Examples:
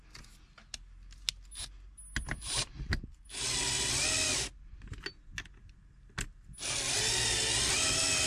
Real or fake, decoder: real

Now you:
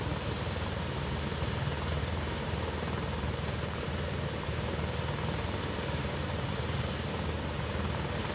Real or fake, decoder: fake, vocoder, BigVGAN v2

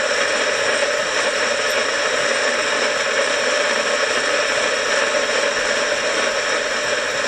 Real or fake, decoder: fake, vocoder, BigVGAN v2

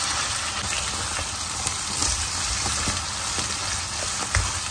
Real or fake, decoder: real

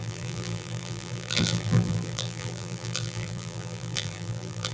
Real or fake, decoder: fake, vocoder, BigVGAN v2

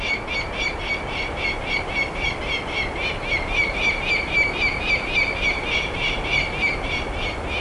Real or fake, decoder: real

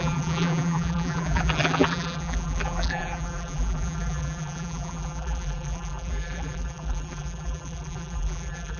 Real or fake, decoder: fake, vocoder, BigVGAN v2